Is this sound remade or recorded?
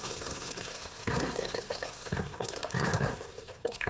remade